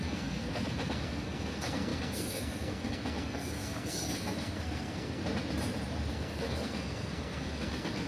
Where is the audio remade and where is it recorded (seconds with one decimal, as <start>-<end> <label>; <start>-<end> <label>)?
0.0-5.2 remade; 5.2-6.1 recorded; 6.1-8.1 remade